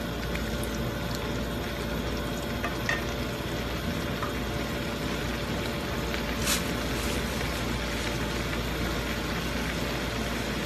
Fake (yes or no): no